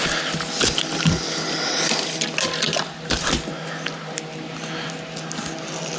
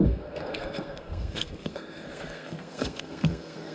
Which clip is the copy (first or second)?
second